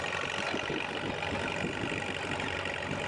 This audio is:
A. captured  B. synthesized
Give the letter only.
A